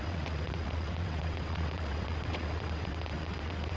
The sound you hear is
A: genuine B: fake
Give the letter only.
B